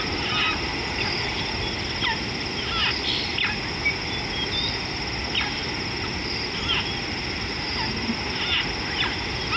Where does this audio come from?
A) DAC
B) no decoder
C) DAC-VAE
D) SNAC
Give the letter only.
B